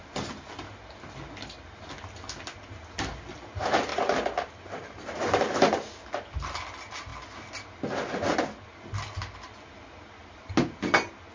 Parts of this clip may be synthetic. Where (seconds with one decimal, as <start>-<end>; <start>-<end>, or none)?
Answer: 3.9-5.0